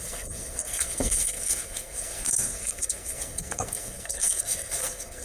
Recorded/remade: remade